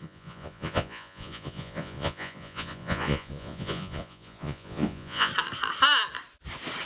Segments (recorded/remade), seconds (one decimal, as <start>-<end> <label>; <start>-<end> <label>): 0.0-5.3 remade; 5.3-6.9 recorded